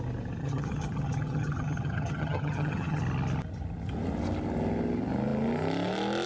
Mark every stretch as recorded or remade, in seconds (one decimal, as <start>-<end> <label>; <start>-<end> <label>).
0.0-0.4 recorded; 0.4-3.0 remade; 3.0-6.3 recorded